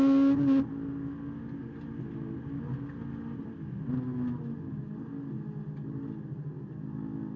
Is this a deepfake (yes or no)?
no